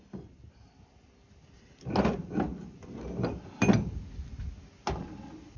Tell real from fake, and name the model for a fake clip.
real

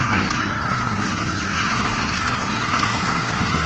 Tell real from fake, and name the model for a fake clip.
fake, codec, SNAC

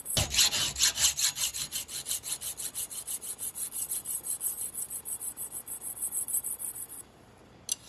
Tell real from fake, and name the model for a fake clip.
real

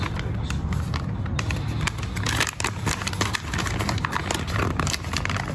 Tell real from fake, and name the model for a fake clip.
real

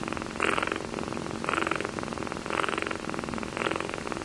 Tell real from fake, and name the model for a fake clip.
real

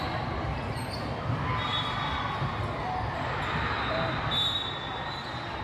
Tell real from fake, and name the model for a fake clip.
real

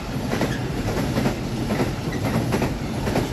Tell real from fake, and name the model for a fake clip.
real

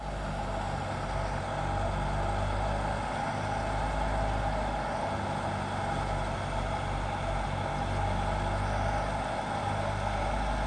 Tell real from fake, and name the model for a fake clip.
real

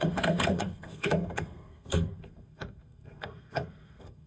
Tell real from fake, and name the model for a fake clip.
fake, codec, SNAC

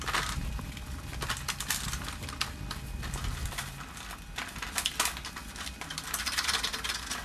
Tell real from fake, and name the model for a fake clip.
real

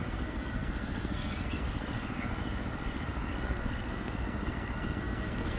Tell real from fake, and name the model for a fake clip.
fake, codec, SNAC